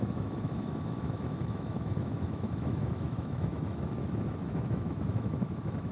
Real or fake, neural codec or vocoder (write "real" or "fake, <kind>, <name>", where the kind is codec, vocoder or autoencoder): fake, autoencoder, DAC-VAE